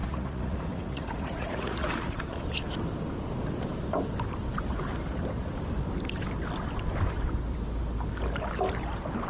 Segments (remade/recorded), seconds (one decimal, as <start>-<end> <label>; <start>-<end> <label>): 0.0-2.4 remade; 2.4-9.3 recorded